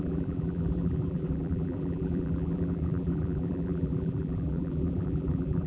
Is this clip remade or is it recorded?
remade